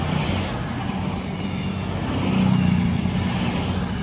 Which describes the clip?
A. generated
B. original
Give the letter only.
B